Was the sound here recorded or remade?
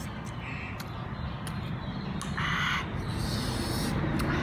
recorded